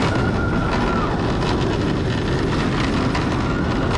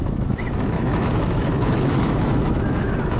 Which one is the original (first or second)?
first